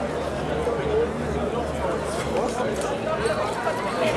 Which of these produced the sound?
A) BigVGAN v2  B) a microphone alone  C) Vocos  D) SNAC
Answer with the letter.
B